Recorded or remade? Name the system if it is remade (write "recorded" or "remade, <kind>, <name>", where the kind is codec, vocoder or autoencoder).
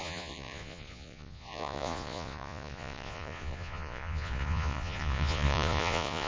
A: remade, vocoder, Vocos